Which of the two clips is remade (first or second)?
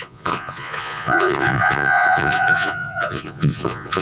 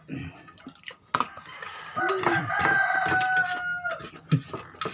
first